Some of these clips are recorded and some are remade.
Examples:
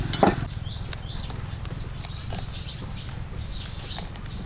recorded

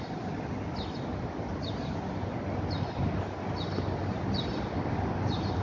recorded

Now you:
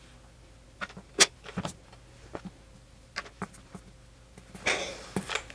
recorded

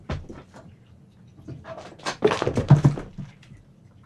recorded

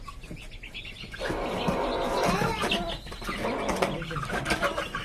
recorded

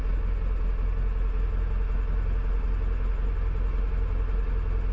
recorded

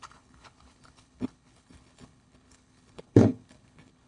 remade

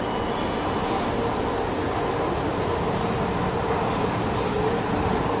recorded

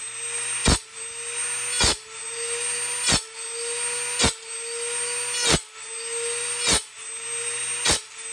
recorded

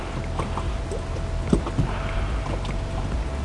recorded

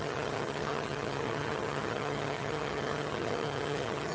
remade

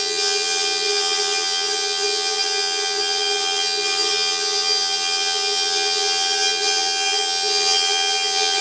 remade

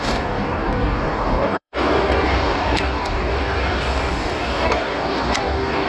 remade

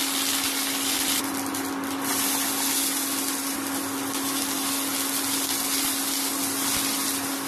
recorded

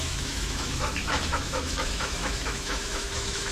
remade